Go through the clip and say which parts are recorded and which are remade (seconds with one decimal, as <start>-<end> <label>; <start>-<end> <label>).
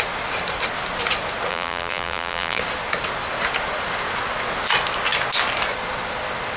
0.0-1.5 recorded; 1.5-2.6 remade; 2.6-6.6 recorded